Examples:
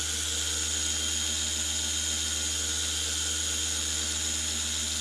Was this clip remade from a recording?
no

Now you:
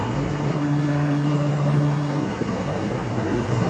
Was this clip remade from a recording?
yes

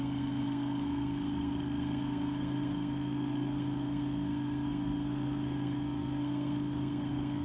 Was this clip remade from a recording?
yes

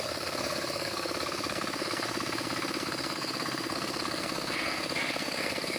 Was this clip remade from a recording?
yes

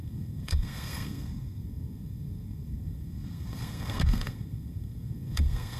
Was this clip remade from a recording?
yes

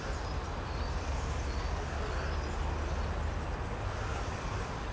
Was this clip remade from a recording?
no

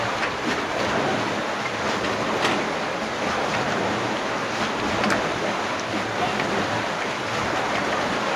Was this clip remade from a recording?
no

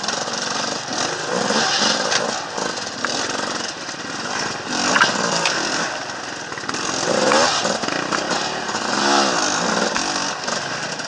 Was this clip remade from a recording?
no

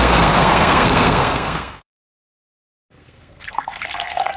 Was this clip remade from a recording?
yes